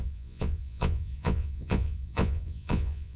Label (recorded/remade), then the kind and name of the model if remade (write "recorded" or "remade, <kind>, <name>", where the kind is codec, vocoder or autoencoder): remade, vocoder, Vocos